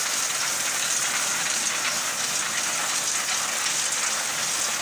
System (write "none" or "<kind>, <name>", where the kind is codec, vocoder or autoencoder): none